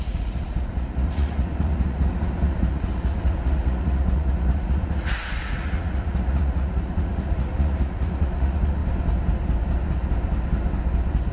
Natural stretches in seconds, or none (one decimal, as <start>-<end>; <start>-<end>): 8.8-11.3